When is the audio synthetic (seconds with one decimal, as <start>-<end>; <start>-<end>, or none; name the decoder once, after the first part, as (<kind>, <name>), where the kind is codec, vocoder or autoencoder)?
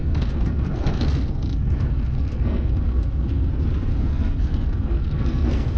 0.0-3.5 (codec, SNAC); 3.9-5.8